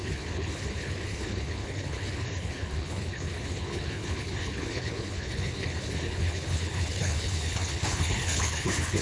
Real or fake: fake